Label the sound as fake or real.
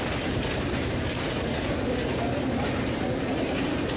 fake